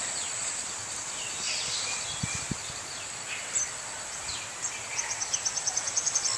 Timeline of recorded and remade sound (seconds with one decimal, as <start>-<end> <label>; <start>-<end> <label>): 0.0-6.4 recorded